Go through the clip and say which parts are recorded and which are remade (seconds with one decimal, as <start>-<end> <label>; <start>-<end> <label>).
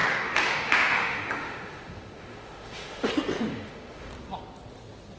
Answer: 0.0-3.1 remade; 3.1-3.5 recorded; 3.5-4.1 remade; 4.1-5.2 recorded